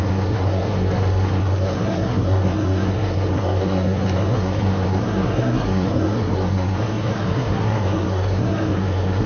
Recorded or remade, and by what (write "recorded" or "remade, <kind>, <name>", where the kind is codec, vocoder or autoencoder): remade, codec, SNAC